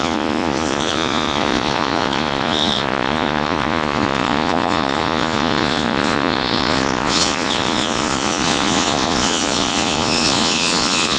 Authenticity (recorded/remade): remade